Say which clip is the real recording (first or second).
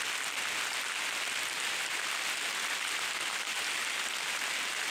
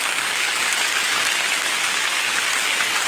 first